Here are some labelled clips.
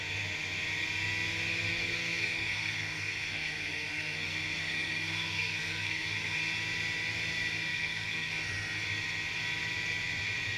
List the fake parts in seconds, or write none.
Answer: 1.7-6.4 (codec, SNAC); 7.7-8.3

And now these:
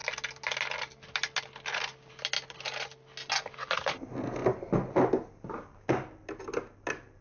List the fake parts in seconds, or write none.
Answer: none

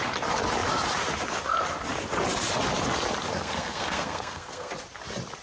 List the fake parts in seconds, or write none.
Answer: 3.3-4.7 (codec, SNAC)

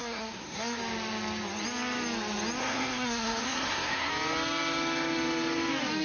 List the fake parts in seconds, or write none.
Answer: 0.0-0.8 (codec, SNAC); 2.6-4.1

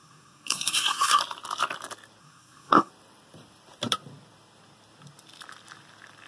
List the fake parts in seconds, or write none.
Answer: 0.0-1.2 (codec, SNAC); 2.2-2.9